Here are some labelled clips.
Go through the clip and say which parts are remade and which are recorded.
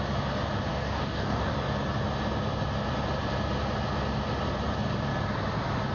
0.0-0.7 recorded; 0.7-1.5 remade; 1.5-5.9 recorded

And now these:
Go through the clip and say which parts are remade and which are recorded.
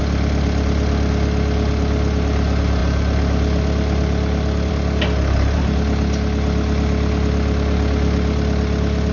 0.0-9.1 recorded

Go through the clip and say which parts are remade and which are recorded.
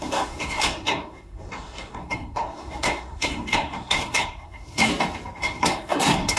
0.0-4.9 remade; 4.9-5.4 recorded; 5.4-6.4 remade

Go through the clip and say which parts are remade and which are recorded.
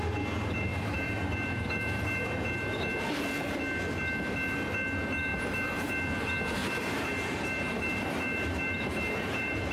0.0-0.7 recorded; 0.7-2.0 remade; 2.0-5.3 recorded; 5.3-5.9 remade; 5.9-6.6 recorded; 6.6-9.7 remade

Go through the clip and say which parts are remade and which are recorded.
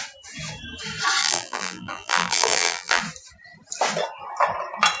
0.0-1.2 recorded; 1.2-3.0 remade; 3.0-5.0 recorded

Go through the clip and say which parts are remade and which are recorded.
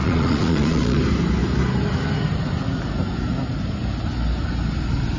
0.0-1.0 remade; 1.0-5.2 recorded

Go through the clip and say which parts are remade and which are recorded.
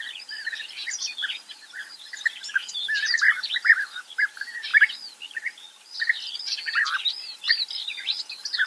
0.0-8.7 recorded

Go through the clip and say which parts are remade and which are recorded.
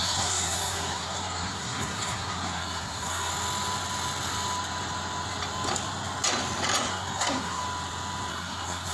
0.0-3.3 remade; 3.3-6.9 recorded; 6.9-7.6 remade; 7.6-8.3 recorded; 8.3-8.9 remade